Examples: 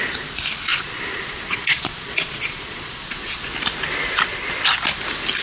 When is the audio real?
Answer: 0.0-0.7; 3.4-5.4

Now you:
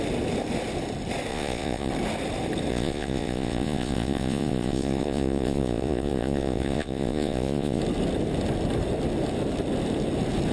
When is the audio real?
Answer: 0.0-1.3; 1.9-2.7; 7.8-10.5